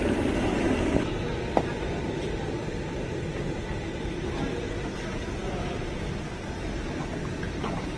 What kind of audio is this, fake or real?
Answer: fake